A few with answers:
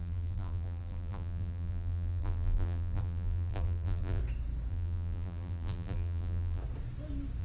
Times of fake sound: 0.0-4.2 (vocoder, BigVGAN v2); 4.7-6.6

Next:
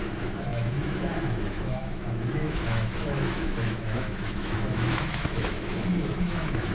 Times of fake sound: 0.0-6.7 (autoencoder, DAC-VAE)

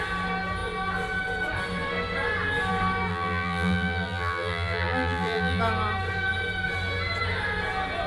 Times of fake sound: 3.1-5.6 (vocoder, BigVGAN v2)

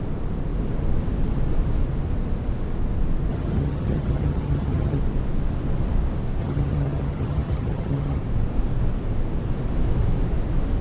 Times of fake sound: 3.3-5.0 (vocoder, HiFi-GAN); 6.4-8.2

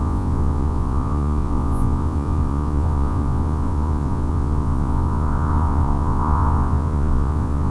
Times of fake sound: 0.0-7.7 (vocoder, Vocos)

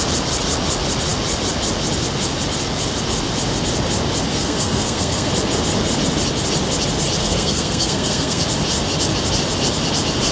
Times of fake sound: 4.3-5.3 (codec, SNAC); 7.2-8.4

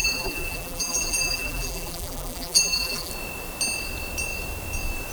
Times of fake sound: 0.0-3.1 (vocoder, BigVGAN v2)

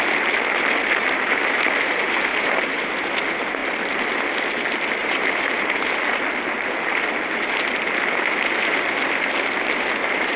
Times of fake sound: 1.0-1.9 (vocoder, BigVGAN v2); 2.3-2.9; 5.0-6.2